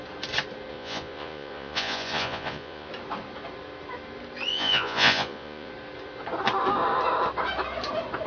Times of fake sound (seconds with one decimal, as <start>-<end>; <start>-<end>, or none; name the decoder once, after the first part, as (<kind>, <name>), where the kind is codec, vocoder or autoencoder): 0.7-2.9 (vocoder, Vocos); 4.5-5.7